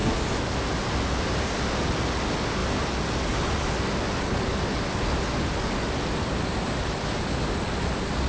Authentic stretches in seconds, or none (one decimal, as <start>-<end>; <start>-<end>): 0.0-8.3